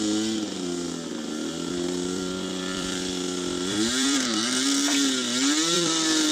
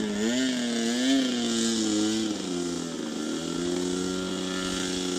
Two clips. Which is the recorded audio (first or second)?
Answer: second